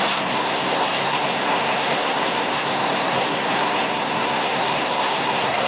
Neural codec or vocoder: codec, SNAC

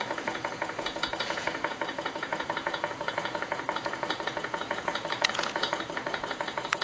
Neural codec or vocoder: vocoder, Vocos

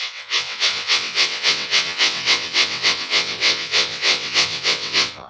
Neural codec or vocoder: vocoder, WaveNeXt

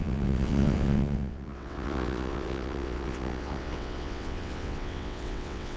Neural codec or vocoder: vocoder, WaveNeXt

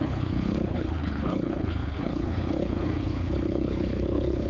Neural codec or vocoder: codec, HILCodec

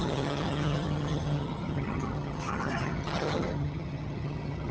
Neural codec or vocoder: vocoder, HiFi-GAN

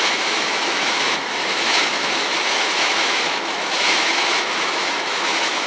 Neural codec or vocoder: autoencoder, DAC-VAE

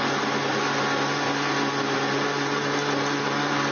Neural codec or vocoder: none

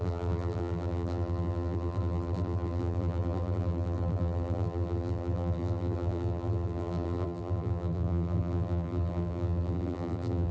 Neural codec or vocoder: vocoder, BigVGAN v2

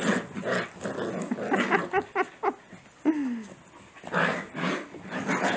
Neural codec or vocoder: none